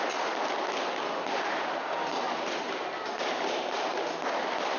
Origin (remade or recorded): recorded